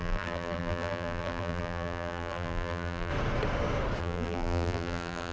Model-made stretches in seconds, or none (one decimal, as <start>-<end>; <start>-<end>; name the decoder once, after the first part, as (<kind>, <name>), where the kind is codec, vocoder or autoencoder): 0.0-3.1 (vocoder, BigVGAN v2); 4.0-5.3